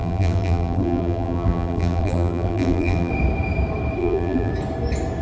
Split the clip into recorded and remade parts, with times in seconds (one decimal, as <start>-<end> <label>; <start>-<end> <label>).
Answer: 0.0-3.1 remade; 3.1-4.0 recorded; 4.0-4.5 remade; 4.5-5.2 recorded

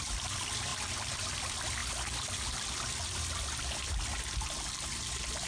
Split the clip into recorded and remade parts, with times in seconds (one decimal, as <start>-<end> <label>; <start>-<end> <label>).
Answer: 0.0-5.5 remade

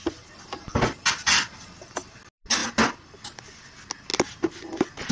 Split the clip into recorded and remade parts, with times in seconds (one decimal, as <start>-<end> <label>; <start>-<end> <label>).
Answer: 0.0-5.1 recorded

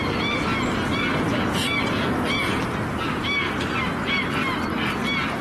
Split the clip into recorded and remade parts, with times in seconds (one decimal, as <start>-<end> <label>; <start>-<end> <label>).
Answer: 0.0-0.5 remade; 0.5-2.3 recorded; 2.3-4.4 remade; 4.4-5.4 recorded

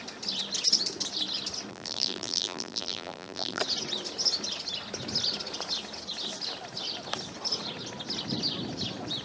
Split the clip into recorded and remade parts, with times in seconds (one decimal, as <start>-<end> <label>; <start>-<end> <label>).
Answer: 0.0-1.7 recorded; 1.7-3.6 remade; 3.6-9.2 recorded

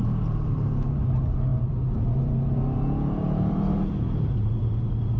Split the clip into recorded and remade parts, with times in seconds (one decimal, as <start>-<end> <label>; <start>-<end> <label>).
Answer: 0.0-5.2 remade

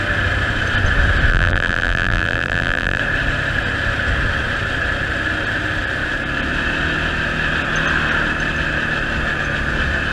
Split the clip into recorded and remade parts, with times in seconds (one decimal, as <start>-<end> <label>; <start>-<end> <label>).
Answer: 0.0-1.3 recorded; 1.3-3.0 remade; 3.0-10.1 recorded

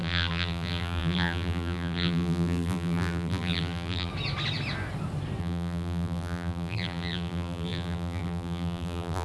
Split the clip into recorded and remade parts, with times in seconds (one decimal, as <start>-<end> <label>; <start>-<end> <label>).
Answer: 0.0-4.1 remade; 4.1-5.4 recorded; 5.4-9.2 remade